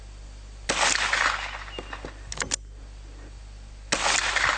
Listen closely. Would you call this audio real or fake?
real